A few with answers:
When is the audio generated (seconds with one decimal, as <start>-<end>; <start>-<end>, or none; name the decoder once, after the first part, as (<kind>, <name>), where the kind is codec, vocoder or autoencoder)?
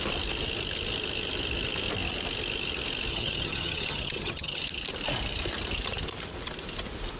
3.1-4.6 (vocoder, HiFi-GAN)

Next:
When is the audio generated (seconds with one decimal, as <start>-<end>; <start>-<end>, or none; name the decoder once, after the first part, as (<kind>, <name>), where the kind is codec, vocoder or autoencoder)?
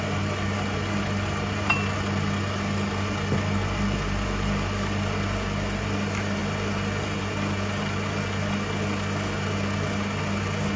none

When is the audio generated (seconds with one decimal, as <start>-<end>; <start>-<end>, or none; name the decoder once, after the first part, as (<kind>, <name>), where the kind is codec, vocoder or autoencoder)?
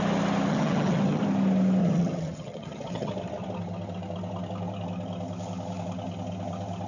0.5-1.2 (vocoder, HiFi-GAN); 1.8-3.1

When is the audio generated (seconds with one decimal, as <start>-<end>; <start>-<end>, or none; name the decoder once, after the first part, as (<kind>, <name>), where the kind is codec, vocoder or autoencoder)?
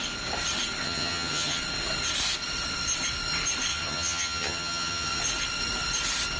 0.8-1.6 (vocoder, HiFi-GAN); 3.7-5.2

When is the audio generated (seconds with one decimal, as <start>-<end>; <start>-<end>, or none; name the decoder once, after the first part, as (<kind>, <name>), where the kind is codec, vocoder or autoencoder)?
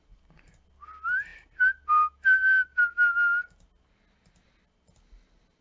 none